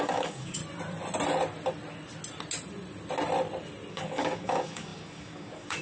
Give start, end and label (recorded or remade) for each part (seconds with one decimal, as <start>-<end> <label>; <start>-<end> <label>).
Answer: 0.0-0.6 remade; 0.6-3.9 recorded; 3.9-5.8 remade